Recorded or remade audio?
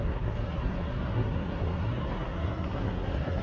remade